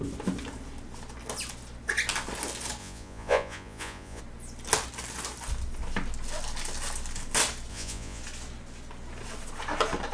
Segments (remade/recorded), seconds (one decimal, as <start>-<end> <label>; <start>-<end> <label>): 0.0-2.8 recorded; 2.8-4.2 remade; 4.2-7.7 recorded; 7.7-8.2 remade; 8.2-10.1 recorded